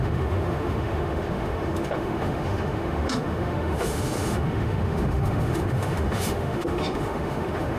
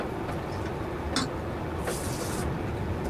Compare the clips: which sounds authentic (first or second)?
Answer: second